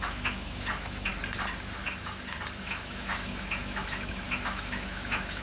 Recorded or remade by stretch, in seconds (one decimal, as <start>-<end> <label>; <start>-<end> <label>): 0.0-1.1 remade; 1.1-2.6 recorded; 2.6-5.4 remade